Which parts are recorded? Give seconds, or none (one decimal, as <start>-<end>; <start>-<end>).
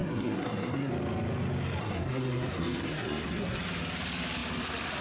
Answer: 0.9-1.8; 3.6-5.0